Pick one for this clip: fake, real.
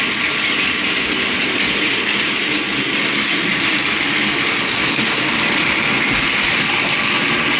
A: real